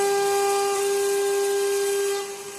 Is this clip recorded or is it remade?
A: recorded